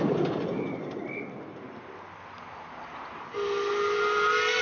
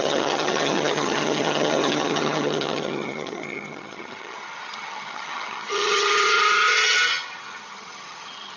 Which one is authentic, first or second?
first